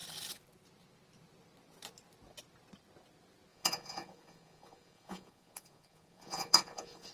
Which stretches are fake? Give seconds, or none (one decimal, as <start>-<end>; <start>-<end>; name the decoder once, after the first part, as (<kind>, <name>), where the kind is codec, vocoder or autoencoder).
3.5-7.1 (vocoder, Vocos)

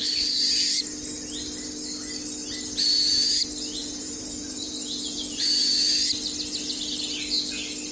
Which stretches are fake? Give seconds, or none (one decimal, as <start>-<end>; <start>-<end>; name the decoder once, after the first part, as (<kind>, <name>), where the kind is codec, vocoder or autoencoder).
3.8-5.5 (vocoder, Vocos)

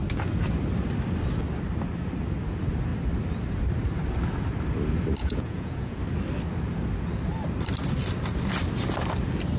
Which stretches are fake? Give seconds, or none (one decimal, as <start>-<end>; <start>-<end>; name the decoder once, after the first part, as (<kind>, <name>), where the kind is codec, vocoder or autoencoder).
5.2-6.0 (vocoder, Vocos)